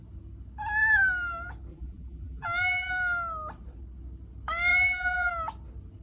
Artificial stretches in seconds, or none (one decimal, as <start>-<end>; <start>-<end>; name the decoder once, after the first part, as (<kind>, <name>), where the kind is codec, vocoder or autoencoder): 1.7-2.9 (vocoder, BigVGAN v2); 4.7-5.3

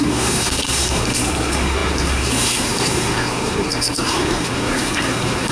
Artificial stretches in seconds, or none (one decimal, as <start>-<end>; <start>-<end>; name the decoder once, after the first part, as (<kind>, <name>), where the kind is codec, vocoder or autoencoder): 0.0-5.5 (codec, SNAC)

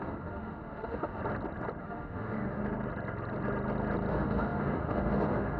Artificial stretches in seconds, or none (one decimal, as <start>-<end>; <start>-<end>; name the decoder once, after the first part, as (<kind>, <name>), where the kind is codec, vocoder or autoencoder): 0.0-1.2 (autoencoder, DAC-VAE); 1.8-2.6; 4.1-5.6

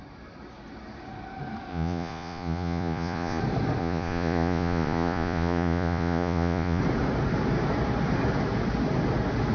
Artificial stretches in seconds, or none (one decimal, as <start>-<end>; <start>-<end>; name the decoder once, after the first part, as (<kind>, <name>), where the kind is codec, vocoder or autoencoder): 1.7-3.4 (vocoder, Vocos); 3.8-6.8

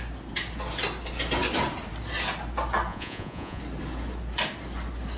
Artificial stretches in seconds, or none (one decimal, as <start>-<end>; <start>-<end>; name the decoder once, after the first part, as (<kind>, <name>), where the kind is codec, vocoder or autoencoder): 2.9-3.6 (vocoder, Vocos)

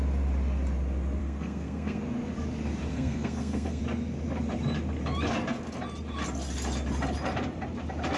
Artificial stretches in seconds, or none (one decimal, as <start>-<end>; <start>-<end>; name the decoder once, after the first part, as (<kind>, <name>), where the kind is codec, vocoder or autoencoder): 1.2-2.0 (codec, SNAC); 2.9-3.8

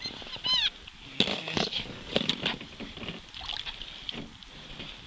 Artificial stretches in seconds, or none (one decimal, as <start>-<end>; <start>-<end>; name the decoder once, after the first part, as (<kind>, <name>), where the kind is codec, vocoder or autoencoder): 1.3-2.3 (codec, DAC)